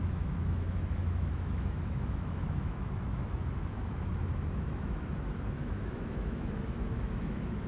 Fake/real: fake